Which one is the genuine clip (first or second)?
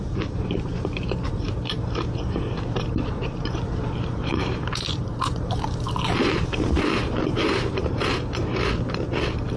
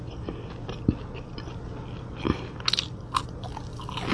second